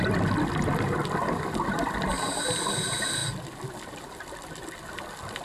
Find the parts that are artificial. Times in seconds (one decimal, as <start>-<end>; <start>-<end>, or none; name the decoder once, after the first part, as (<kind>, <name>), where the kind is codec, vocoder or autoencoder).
none